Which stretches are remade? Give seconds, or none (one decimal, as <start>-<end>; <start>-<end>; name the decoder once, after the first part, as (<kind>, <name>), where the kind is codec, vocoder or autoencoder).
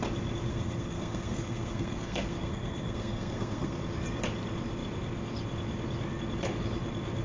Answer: 0.5-3.8 (codec, SNAC)